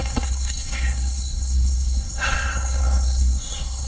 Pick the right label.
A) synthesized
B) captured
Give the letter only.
A